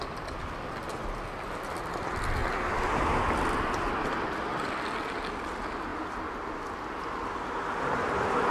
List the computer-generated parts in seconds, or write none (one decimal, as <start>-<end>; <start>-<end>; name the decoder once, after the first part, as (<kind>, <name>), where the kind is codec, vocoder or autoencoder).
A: none